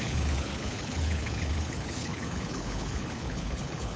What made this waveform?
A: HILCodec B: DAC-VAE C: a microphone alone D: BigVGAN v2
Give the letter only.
A